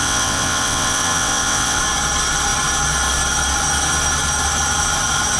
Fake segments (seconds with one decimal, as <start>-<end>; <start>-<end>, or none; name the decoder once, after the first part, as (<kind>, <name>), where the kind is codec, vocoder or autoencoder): 0.0-1.8 (vocoder, WaveNeXt)